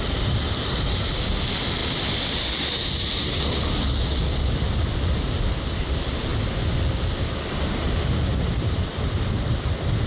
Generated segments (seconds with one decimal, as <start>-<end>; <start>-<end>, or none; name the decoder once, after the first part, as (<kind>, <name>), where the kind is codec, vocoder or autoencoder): none